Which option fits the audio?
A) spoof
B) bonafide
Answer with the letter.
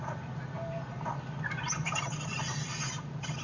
B